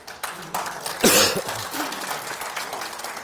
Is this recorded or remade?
recorded